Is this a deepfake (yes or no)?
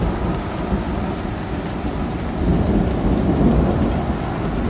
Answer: no